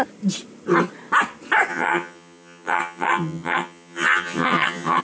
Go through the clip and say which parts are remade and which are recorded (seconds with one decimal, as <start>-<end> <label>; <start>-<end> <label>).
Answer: 0.0-1.7 recorded; 1.7-5.0 remade